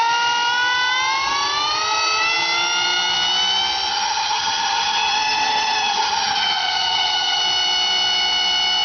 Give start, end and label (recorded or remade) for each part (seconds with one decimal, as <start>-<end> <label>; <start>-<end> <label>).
0.0-3.9 recorded; 3.9-7.4 remade; 7.4-8.8 recorded

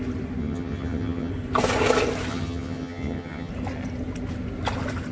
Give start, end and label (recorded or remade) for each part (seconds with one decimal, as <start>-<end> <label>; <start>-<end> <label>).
0.0-0.4 recorded; 0.4-1.3 remade; 1.3-2.3 recorded; 2.3-3.5 remade; 3.5-5.1 recorded

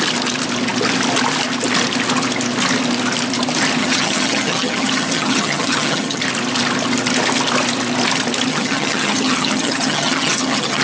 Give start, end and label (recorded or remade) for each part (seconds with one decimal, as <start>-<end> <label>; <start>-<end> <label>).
0.0-3.8 recorded; 3.8-6.2 remade; 6.2-8.5 recorded; 8.5-10.8 remade

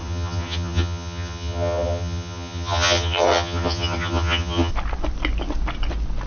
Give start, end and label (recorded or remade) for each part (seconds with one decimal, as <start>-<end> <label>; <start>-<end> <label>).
0.0-4.7 remade; 4.7-6.3 recorded